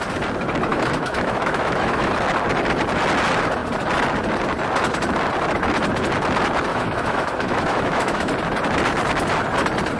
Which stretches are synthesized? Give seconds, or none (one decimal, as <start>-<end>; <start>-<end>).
0.7-2.1; 6.7-8.3